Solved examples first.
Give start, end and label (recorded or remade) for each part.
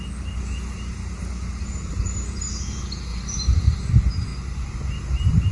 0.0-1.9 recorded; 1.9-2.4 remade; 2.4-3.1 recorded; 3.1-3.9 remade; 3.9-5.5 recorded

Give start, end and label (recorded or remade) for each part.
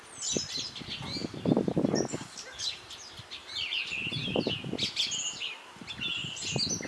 0.0-3.4 recorded; 3.4-4.4 remade; 4.4-6.9 recorded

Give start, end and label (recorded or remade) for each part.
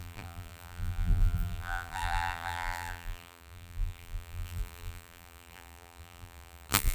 0.0-6.9 remade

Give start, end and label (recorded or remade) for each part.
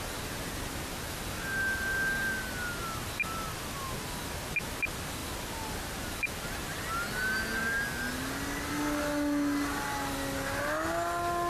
0.0-11.5 recorded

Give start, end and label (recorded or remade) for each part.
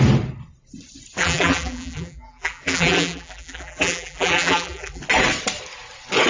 0.0-1.2 recorded; 1.2-5.0 remade; 5.0-6.3 recorded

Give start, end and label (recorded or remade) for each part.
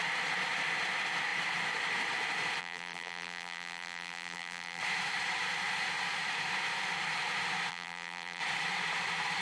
0.0-2.6 recorded; 2.6-4.8 remade; 4.8-7.7 recorded; 7.7-8.4 remade; 8.4-9.4 recorded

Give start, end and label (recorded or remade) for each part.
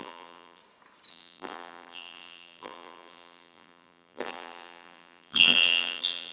0.0-0.6 remade; 0.6-1.1 recorded; 1.1-6.3 remade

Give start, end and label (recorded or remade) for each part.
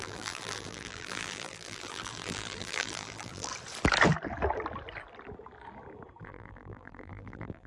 0.0-3.5 remade; 3.5-6.2 recorded; 6.2-7.7 remade